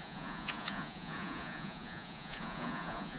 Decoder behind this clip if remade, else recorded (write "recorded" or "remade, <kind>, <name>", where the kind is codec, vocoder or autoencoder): remade, vocoder, Vocos